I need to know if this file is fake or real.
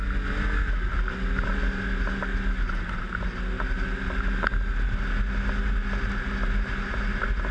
real